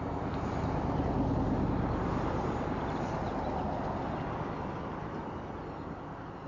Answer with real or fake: real